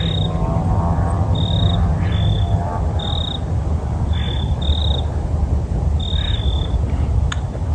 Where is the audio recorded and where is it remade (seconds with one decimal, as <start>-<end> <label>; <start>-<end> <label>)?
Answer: 0.0-7.7 recorded

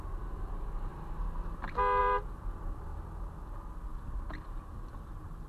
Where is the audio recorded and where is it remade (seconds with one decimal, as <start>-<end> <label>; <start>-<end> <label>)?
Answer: 0.0-0.9 remade; 0.9-2.0 recorded; 2.0-2.9 remade; 2.9-4.3 recorded; 4.3-5.5 remade

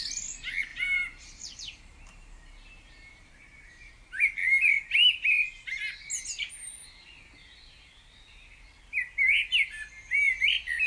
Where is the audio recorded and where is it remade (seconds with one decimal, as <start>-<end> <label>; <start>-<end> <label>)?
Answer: 0.0-0.7 recorded; 0.7-3.9 remade; 3.9-10.9 recorded

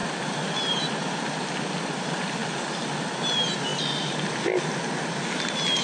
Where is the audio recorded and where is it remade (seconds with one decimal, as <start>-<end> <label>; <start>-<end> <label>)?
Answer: 0.0-0.9 remade; 0.9-2.4 recorded; 2.4-3.1 remade; 3.1-5.8 recorded

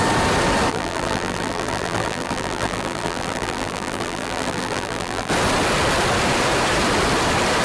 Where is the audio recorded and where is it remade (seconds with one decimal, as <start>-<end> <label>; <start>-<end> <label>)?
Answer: 0.0-0.7 recorded; 0.7-5.3 remade; 5.3-7.6 recorded